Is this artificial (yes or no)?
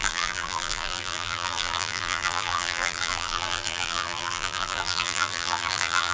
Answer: yes